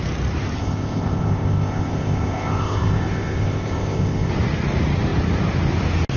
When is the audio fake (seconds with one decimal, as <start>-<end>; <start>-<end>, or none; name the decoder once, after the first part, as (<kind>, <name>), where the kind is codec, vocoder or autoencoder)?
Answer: 0.6-4.3 (codec, ZipCodec)